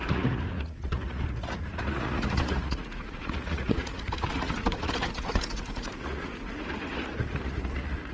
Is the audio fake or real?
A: fake